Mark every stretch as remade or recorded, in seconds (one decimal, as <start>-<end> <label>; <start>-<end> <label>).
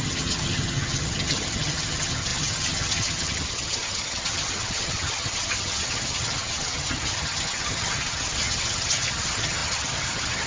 0.0-10.5 remade